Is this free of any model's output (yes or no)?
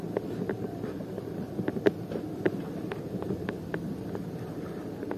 yes